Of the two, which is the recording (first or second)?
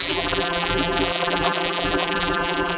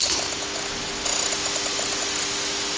second